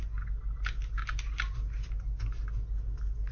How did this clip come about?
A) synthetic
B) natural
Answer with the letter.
B